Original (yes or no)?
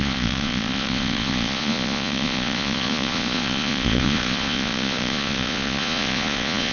no